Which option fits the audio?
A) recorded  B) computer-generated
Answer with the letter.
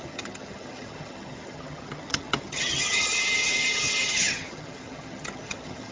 B